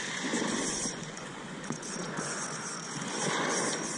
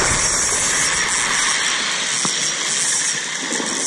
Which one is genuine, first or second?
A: second